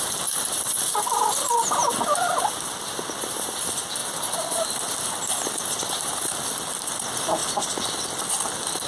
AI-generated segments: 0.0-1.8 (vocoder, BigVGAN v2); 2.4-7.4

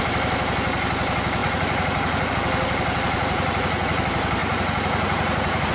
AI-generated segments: 1.4-2.3 (vocoder, Vocos); 3.2-4.0; 4.4-5.7